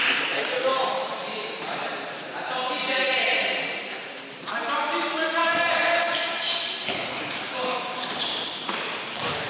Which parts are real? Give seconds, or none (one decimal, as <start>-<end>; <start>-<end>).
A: 0.0-0.7; 2.7-5.4; 8.8-9.5